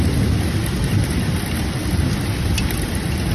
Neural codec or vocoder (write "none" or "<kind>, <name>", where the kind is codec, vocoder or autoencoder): none